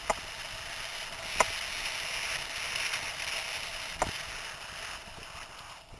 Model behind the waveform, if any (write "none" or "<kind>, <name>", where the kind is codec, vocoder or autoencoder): none